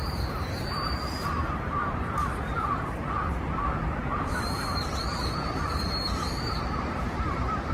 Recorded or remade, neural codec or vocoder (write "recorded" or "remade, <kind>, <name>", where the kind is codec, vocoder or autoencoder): remade, vocoder, BigVGAN v2